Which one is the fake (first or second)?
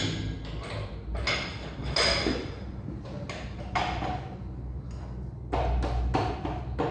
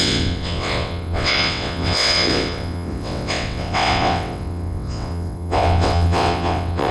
second